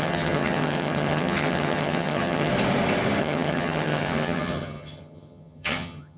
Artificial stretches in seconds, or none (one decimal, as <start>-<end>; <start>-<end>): 0.0-2.5; 3.2-6.2